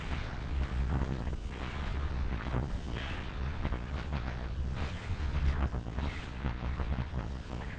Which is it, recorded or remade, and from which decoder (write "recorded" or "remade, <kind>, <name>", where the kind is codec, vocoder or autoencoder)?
remade, vocoder, Vocos